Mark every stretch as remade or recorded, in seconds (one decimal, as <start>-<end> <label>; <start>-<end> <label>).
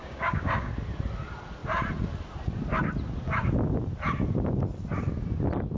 0.0-0.7 remade; 0.7-5.8 recorded